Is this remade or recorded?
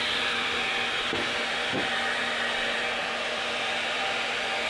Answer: remade